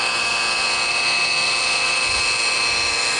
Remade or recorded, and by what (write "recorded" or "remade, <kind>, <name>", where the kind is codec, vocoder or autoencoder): recorded